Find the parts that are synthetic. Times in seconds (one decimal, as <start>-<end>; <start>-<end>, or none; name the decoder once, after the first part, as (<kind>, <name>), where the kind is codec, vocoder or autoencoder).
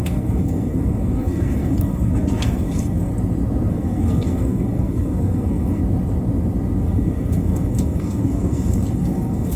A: 0.0-3.1 (codec, SNAC); 3.7-5.8; 6.8-9.6